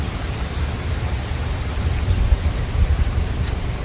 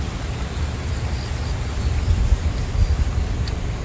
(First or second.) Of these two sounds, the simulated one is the first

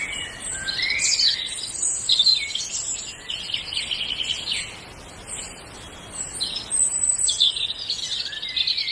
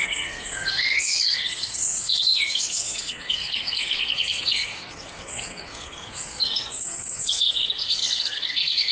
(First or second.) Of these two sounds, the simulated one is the second